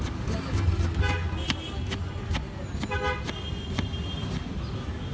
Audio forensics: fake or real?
real